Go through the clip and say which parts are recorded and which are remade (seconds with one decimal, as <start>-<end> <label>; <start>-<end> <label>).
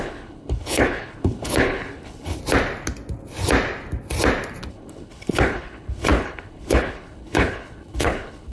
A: 0.0-2.4 remade; 2.4-4.7 recorded; 4.7-8.5 remade